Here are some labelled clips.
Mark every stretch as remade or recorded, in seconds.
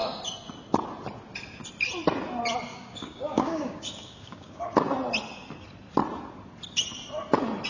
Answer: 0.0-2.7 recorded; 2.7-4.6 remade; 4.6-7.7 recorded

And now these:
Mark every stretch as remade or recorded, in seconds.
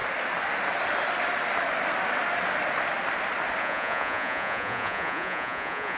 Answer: 0.0-3.6 recorded; 3.6-6.0 remade